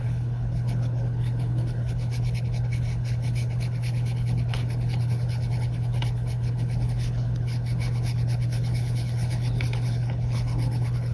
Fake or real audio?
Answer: fake